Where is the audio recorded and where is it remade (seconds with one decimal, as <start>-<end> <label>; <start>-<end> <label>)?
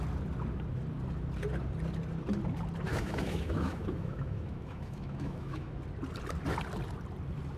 0.0-2.9 recorded; 2.9-5.7 remade; 5.7-7.6 recorded